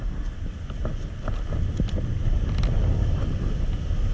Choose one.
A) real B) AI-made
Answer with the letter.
A